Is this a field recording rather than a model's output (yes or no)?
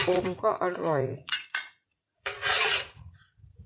no